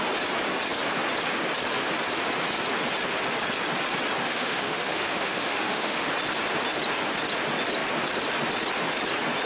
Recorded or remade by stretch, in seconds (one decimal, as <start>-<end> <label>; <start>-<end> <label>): 0.0-4.2 recorded; 4.2-6.1 remade; 6.1-9.5 recorded